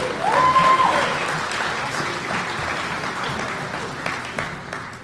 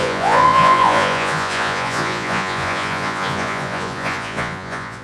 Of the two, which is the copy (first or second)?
second